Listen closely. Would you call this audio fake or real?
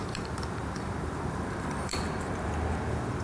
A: fake